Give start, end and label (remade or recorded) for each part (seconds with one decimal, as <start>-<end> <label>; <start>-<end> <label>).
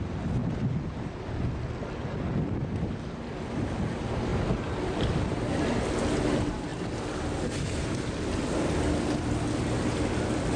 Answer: 0.0-10.6 recorded